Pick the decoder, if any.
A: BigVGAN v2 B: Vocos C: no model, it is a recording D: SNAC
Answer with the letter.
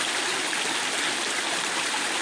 C